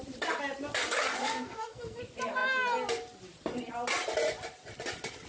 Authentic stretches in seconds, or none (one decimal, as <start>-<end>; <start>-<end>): 0.0-1.2; 2.0-5.3